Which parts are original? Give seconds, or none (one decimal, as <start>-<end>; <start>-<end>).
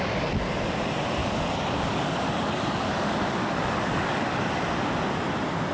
0.0-1.2; 4.6-5.7